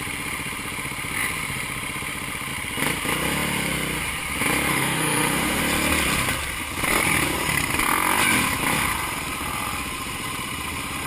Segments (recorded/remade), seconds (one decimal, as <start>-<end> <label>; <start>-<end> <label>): 0.0-4.7 recorded; 4.7-5.6 remade; 5.6-11.1 recorded